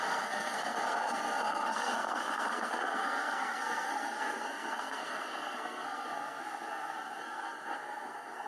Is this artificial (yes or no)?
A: yes